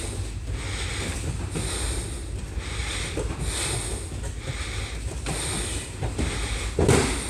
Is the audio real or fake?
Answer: real